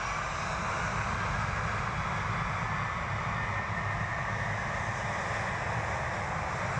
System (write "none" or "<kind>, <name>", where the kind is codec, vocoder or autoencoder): none